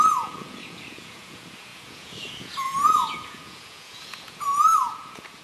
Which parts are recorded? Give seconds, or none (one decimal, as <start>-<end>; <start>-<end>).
none